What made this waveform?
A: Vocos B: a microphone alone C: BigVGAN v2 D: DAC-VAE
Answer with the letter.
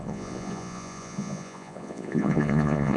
A